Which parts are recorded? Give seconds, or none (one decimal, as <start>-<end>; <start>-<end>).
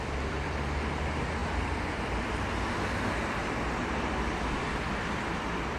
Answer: none